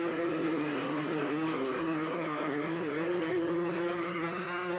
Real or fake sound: fake